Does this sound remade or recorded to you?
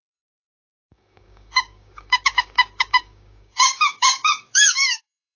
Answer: remade